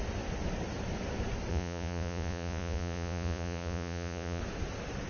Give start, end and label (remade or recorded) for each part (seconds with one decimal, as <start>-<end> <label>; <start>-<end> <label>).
0.0-1.5 recorded; 1.5-4.4 remade; 4.4-5.1 recorded